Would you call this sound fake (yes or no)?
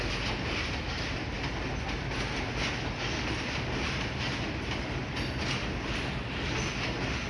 no